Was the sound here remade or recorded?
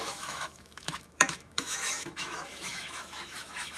remade